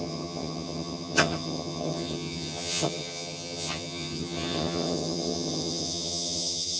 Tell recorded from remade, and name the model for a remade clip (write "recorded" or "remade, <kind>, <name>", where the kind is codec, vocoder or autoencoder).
remade, vocoder, HiFi-GAN